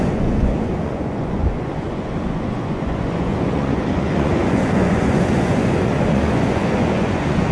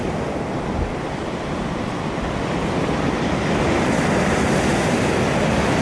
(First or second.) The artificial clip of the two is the first